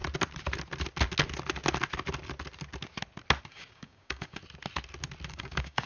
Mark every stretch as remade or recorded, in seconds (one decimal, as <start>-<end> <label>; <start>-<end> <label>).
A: 0.0-3.5 recorded; 3.5-4.4 remade; 4.4-5.3 recorded; 5.3-5.9 remade